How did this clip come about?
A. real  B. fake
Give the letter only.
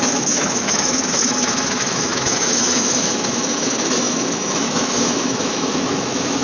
B